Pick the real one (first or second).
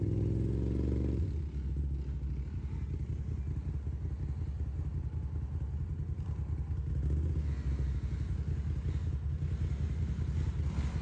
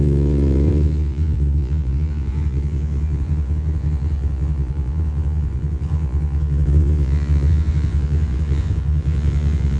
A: first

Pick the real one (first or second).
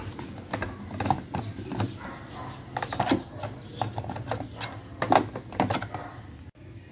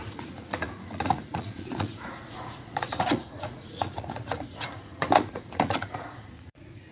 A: first